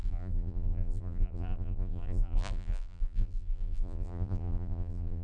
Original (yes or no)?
no